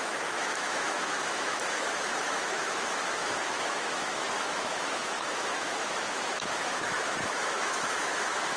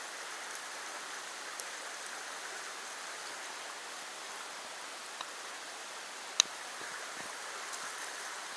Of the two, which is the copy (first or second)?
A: first